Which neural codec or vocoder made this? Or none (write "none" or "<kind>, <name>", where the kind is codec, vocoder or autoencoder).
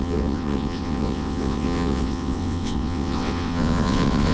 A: vocoder, WaveNeXt